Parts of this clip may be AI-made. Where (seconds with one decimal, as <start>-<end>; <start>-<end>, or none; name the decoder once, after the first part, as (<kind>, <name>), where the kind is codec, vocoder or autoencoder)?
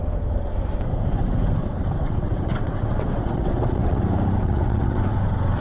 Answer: 1.6-4.0 (vocoder, WaveNeXt); 4.4-5.0